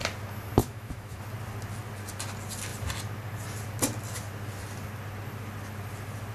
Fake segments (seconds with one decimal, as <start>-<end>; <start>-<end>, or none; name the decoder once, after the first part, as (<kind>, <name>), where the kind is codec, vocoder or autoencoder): 0.6-1.2 (autoencoder, DAC-VAE)